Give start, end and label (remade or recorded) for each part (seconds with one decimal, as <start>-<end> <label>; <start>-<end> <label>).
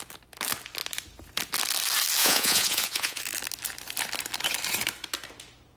0.0-2.2 recorded; 2.2-3.2 remade; 3.2-5.8 recorded